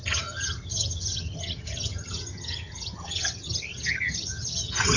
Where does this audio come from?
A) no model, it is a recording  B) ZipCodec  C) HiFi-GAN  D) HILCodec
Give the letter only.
C